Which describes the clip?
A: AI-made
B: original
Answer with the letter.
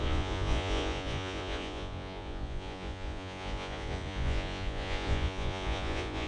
A